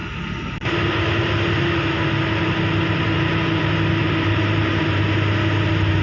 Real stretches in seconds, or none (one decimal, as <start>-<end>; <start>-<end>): 0.0-4.0; 5.0-6.0